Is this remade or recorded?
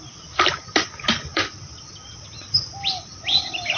remade